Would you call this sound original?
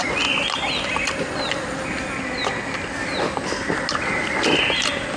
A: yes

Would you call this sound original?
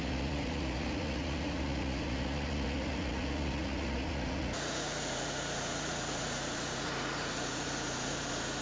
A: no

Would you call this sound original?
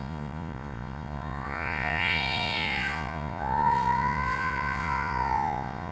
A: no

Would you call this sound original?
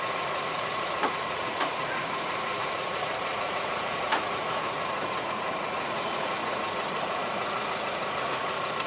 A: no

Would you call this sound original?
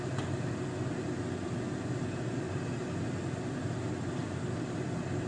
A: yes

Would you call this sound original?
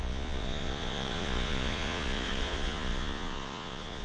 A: no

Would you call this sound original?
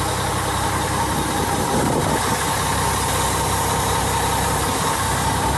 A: yes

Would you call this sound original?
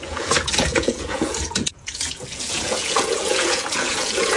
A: no